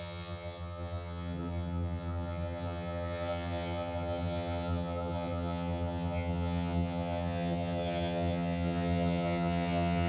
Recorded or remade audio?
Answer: remade